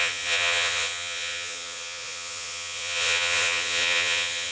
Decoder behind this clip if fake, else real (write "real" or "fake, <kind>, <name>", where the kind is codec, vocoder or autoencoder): fake, vocoder, Vocos